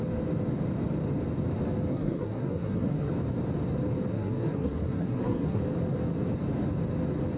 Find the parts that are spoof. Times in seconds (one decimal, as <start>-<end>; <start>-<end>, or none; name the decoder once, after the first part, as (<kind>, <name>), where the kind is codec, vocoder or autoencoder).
1.9-3.1 (codec, SNAC); 4.1-5.6